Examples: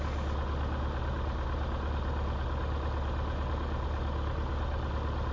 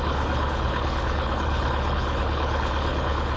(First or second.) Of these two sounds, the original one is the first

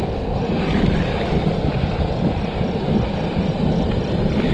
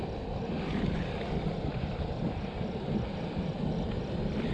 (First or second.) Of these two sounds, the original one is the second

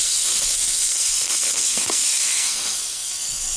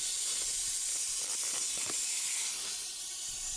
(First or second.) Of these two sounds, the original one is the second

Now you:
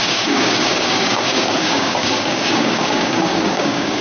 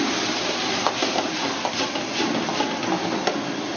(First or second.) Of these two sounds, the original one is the second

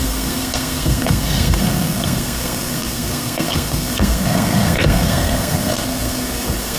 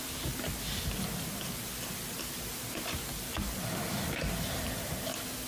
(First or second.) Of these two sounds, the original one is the second